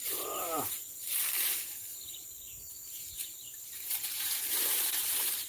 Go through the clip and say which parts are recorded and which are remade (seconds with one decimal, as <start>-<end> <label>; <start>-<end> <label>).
0.0-5.5 remade